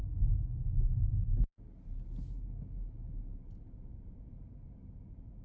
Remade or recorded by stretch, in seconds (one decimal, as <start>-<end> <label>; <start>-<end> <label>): 0.0-5.4 recorded